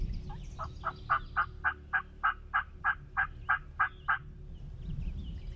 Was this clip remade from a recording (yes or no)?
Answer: no